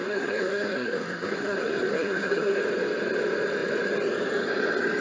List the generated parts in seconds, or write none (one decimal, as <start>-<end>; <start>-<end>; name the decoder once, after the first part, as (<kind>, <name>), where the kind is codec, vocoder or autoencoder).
0.0-2.6 (codec, SNAC)